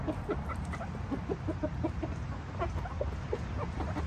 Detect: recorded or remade recorded